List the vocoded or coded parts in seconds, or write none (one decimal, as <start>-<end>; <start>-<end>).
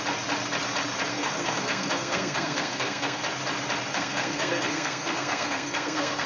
1.1-3.2; 3.9-6.3